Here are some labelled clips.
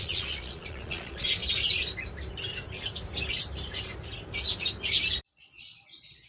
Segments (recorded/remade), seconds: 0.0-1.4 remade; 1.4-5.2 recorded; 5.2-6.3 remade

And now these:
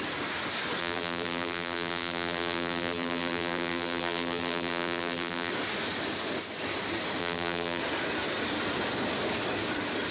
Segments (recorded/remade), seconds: 0.0-0.8 recorded; 0.8-5.5 remade; 5.5-7.2 recorded; 7.2-7.8 remade; 7.8-10.1 recorded